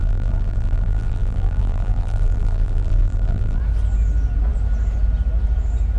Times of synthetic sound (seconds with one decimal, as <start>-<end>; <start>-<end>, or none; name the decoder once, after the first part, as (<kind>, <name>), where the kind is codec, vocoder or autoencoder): 0.0-3.6 (vocoder, BigVGAN v2)